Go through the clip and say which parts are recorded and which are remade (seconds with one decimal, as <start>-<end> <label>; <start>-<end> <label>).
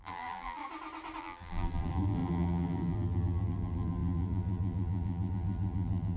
0.0-0.6 remade; 0.6-1.2 recorded; 1.2-6.2 remade